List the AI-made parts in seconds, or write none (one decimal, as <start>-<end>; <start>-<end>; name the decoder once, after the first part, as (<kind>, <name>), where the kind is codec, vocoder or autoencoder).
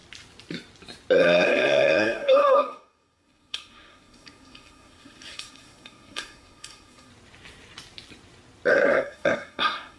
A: 1.2-7.1 (codec, SNAC); 8.7-10.0